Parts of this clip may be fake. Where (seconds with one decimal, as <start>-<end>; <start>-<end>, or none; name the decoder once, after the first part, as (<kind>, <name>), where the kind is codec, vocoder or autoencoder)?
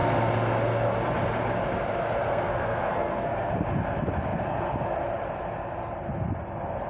2.3-3.5 (codec, SNAC)